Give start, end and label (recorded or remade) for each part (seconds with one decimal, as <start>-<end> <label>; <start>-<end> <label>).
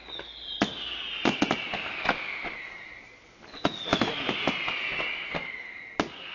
0.0-6.3 recorded